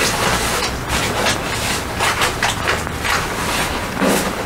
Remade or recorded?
recorded